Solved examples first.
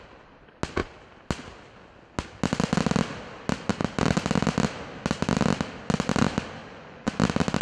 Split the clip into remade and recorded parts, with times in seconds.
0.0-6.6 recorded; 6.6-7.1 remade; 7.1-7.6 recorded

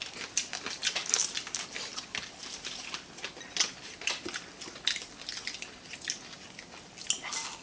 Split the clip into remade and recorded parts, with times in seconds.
0.0-7.6 recorded

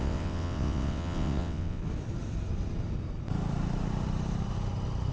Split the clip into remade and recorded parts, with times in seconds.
0.0-1.8 remade; 1.8-5.1 recorded